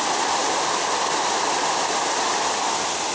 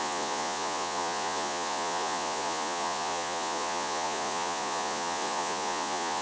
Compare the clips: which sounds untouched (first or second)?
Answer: first